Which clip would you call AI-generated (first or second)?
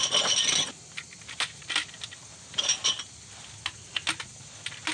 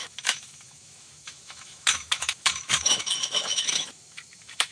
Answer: second